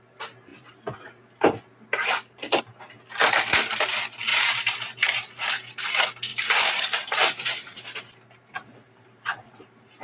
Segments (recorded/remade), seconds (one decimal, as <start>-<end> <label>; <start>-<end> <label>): 0.0-0.5 recorded; 0.5-2.6 remade; 2.6-4.3 recorded; 4.3-5.7 remade; 5.7-6.3 recorded; 6.3-10.0 remade